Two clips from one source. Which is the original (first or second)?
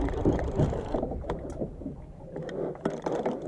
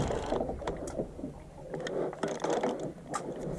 second